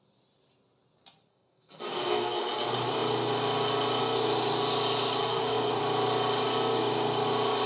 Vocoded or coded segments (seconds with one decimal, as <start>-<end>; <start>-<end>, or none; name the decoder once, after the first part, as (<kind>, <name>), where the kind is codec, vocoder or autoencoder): 1.3-2.4 (codec, SNAC); 5.2-5.8